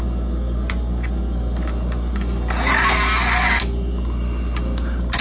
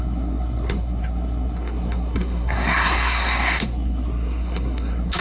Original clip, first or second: first